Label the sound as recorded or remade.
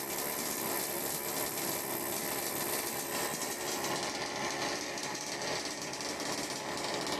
recorded